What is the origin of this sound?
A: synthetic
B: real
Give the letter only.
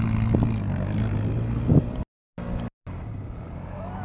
B